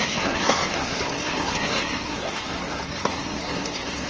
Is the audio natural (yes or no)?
no